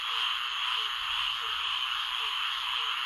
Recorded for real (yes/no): no